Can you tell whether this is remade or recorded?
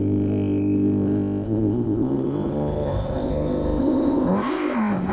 remade